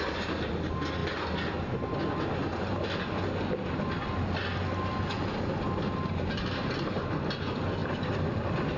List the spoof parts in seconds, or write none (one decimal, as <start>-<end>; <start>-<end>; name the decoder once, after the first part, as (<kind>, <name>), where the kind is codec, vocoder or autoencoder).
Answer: none